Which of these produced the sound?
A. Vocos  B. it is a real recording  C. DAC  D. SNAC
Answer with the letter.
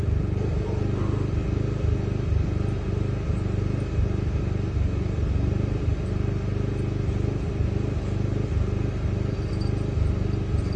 B